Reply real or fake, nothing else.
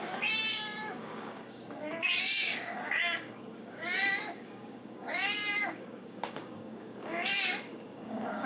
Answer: fake